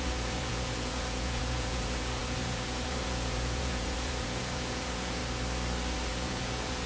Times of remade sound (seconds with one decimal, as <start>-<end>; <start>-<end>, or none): 0.0-5.2; 6.1-6.9